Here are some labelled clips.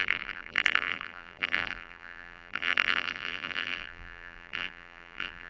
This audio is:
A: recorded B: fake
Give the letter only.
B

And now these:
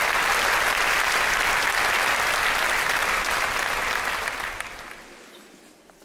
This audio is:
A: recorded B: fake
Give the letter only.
A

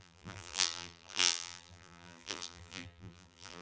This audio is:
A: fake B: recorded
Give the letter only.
A